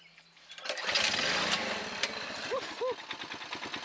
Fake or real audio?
real